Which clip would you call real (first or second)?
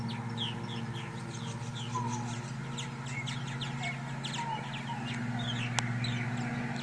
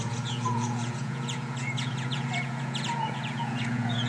first